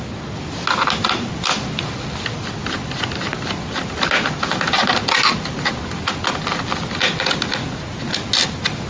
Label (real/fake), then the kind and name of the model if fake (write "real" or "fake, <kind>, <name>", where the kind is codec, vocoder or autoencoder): real